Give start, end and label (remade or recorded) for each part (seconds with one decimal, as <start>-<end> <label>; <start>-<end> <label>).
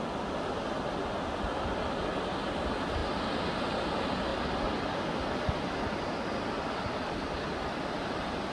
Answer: 0.0-8.5 recorded